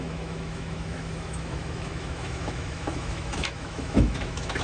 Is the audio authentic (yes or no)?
no